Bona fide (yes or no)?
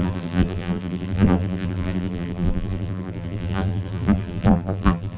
no